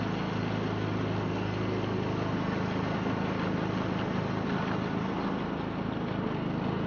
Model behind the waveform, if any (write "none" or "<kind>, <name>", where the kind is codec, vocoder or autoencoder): none